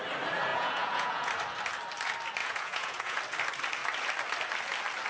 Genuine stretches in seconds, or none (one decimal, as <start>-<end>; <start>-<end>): 0.0-0.5; 1.3-2.4; 3.2-5.1